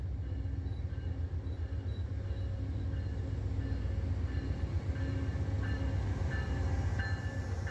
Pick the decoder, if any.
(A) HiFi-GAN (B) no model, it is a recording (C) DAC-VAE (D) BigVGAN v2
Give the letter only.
B